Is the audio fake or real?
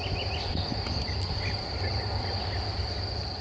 real